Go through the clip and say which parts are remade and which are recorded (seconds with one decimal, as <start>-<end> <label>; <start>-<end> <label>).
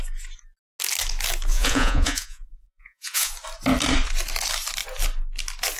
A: 0.0-1.5 recorded; 1.5-3.3 remade; 3.3-5.8 recorded